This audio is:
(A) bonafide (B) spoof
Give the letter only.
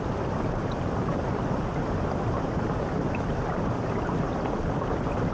A